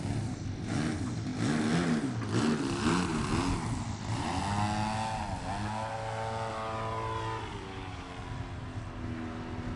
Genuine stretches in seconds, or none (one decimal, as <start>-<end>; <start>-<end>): 0.0-7.5; 8.1-9.8